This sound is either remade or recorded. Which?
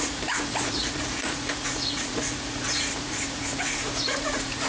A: remade